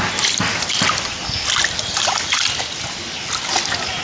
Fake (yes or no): no